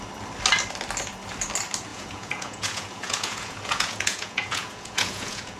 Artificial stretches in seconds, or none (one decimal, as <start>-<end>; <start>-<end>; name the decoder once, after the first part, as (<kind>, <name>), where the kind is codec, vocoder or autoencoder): 1.9-5.6 (vocoder, Vocos)